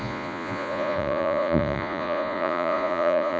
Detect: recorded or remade remade